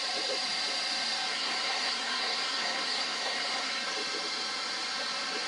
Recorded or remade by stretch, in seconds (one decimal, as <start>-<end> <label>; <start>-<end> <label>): 0.0-1.3 recorded; 1.3-3.8 remade; 3.8-5.5 recorded